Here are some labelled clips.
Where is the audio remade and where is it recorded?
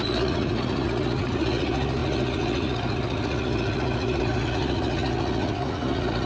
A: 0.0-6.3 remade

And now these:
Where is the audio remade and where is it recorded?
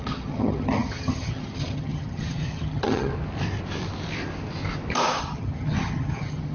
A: 0.0-3.1 remade; 3.1-5.2 recorded; 5.2-6.5 remade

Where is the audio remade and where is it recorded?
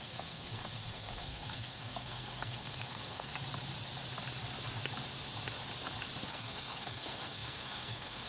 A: 0.0-3.3 remade; 3.3-6.3 recorded; 6.3-8.3 remade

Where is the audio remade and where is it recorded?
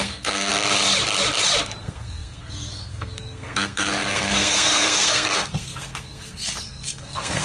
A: 0.0-0.5 remade; 0.5-1.8 recorded; 1.8-7.4 remade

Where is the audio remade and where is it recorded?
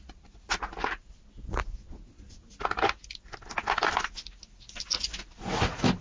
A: 0.0-6.0 recorded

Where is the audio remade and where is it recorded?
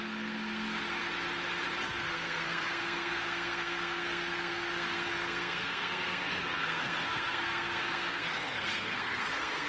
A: 0.0-1.0 remade; 1.0-1.8 recorded; 1.8-9.7 remade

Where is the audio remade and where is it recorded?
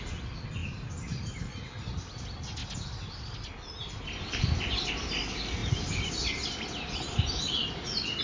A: 0.0-8.2 recorded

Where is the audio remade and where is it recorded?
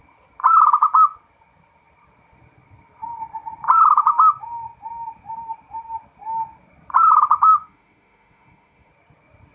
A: 0.0-7.5 recorded; 7.5-8.9 remade; 8.9-9.5 recorded